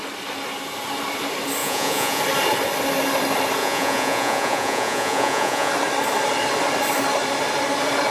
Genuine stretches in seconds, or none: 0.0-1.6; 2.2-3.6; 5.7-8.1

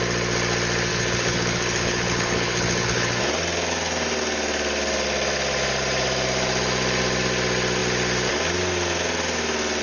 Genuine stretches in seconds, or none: 0.0-0.9; 3.2-9.8

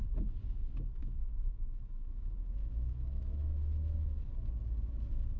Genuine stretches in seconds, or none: 0.0-1.0; 4.2-5.4

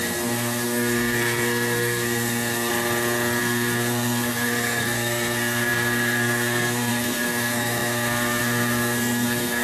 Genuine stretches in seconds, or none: 2.7-3.4